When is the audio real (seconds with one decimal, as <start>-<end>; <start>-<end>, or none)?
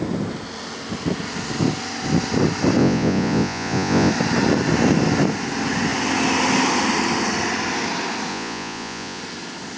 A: 0.0-2.8; 4.1-8.3; 9.2-9.8